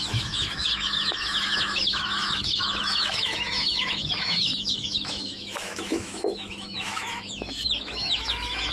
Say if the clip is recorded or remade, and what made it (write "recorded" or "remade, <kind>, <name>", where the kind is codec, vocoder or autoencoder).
remade, autoencoder, DAC-VAE